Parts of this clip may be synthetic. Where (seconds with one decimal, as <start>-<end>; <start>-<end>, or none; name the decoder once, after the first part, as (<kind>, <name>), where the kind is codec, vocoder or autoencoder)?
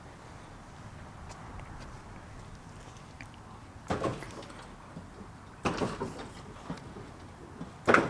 none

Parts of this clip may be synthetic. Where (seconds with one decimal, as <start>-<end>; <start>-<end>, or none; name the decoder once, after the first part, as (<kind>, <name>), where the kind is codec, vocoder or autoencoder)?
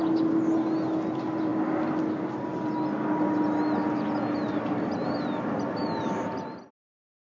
5.8-7.4 (vocoder, BigVGAN v2)